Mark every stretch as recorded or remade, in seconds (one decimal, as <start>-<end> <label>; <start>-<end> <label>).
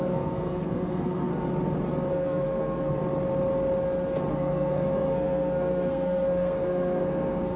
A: 0.0-1.3 remade; 1.3-2.1 recorded; 2.1-3.0 remade; 3.0-4.3 recorded; 4.3-7.6 remade